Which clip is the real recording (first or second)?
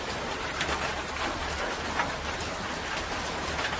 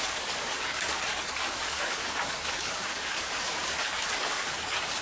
first